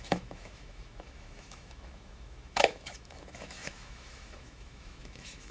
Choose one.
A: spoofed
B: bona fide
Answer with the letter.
A